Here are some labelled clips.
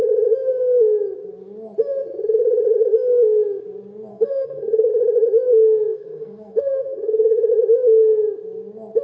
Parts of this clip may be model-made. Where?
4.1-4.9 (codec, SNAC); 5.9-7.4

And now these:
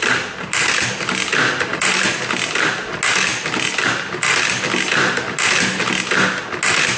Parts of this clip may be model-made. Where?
none

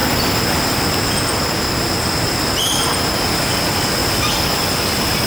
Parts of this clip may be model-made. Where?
none

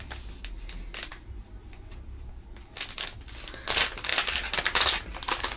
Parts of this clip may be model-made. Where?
none

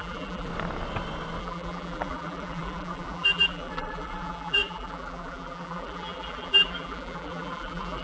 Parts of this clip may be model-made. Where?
0.0-0.5 (vocoder, BigVGAN v2); 1.4-8.0